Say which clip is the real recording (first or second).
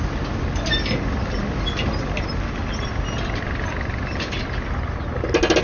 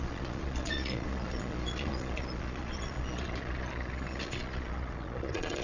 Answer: first